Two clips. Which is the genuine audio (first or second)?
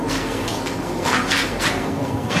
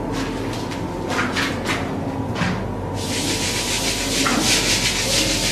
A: second